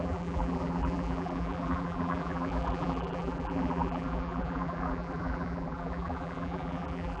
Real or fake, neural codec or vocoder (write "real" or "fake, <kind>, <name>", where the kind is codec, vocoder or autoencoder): fake, vocoder, BigVGAN v2